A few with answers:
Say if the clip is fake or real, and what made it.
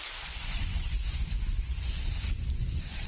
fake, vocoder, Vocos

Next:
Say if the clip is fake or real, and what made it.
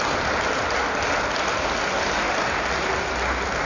real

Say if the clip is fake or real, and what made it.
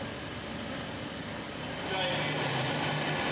real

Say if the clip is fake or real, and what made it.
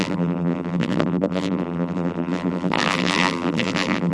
fake, vocoder, BigVGAN v2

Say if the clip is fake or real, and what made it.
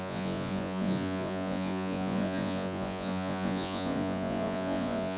fake, vocoder, Vocos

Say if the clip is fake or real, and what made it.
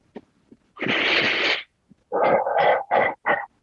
real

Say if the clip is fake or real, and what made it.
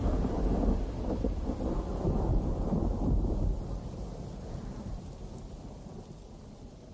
real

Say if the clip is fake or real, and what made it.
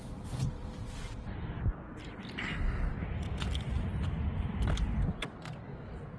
real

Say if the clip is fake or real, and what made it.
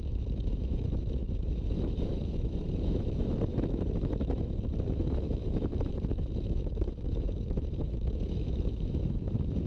fake, autoencoder, DAC-VAE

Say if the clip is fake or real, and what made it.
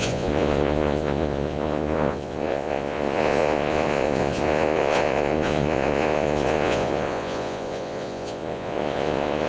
fake, vocoder, Vocos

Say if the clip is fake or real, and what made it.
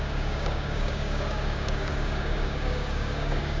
fake, codec, DAC